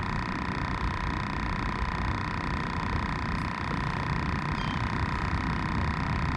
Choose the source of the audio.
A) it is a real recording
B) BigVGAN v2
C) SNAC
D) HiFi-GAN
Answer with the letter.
A